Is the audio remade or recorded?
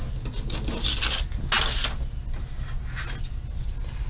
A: recorded